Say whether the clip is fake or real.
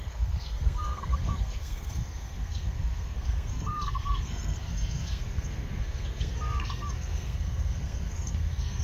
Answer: fake